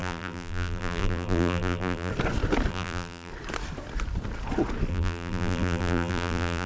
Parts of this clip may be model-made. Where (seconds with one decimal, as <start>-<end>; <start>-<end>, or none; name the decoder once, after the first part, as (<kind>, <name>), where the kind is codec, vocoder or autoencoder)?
0.0-2.1 (vocoder, BigVGAN v2); 2.7-3.3; 4.9-6.7